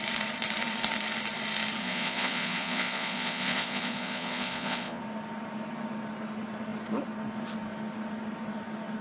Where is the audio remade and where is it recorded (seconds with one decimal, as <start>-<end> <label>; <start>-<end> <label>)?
0.0-1.8 recorded; 1.8-5.0 remade; 5.0-9.0 recorded